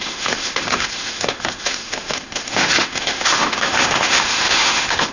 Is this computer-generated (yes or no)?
yes